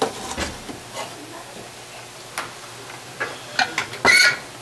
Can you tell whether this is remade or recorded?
recorded